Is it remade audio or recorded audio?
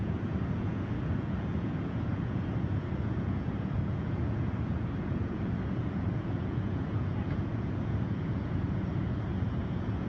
remade